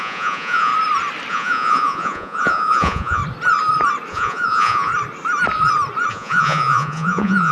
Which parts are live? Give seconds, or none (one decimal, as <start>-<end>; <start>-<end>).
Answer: 0.7-1.3; 3.2-4.1; 4.9-6.1